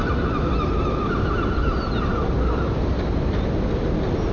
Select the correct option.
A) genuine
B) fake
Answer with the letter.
A